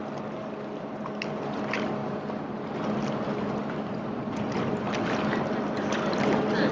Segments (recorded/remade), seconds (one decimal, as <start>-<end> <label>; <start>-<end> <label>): 0.0-6.7 recorded